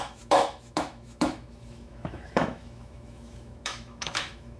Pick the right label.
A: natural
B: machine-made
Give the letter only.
B